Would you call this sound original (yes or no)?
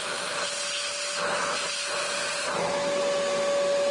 yes